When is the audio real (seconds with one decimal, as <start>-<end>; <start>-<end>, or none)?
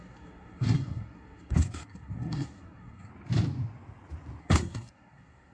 3.1-4.4